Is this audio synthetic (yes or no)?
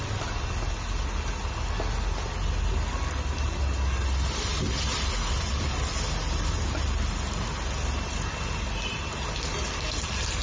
no